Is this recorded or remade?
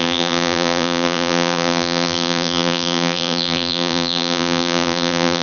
remade